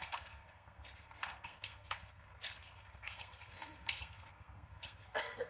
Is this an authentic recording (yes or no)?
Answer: no